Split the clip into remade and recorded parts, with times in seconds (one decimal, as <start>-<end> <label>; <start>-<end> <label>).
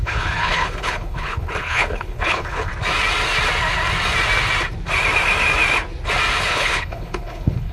0.0-2.7 remade; 2.7-6.4 recorded; 6.4-7.7 remade